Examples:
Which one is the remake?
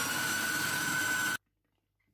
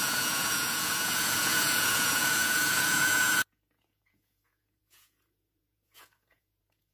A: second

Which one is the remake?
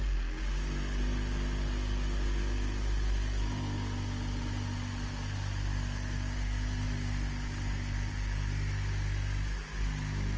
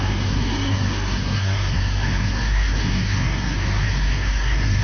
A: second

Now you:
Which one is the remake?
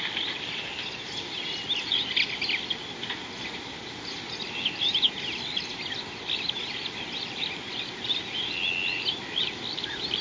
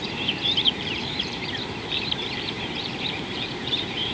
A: second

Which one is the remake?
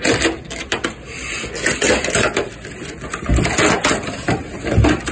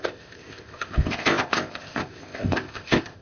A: second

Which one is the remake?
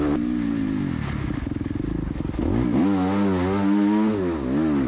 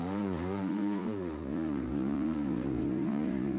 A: second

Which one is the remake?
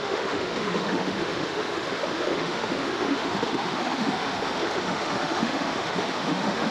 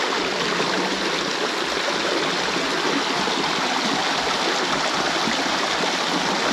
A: first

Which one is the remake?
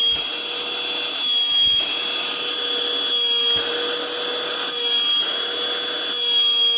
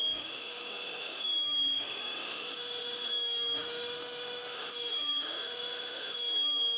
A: second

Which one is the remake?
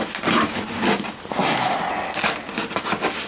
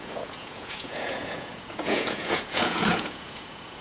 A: second